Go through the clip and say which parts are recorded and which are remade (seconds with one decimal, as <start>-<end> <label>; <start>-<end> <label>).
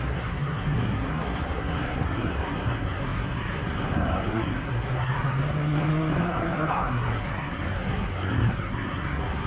0.0-9.5 remade